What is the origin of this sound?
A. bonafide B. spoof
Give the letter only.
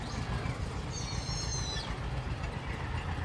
A